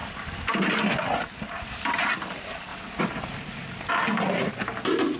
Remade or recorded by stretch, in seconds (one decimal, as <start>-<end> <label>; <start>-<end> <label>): 0.0-2.7 recorded; 2.7-3.9 remade; 3.9-5.2 recorded